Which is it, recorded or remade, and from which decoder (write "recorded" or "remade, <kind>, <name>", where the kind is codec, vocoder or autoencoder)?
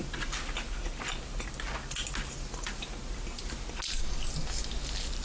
recorded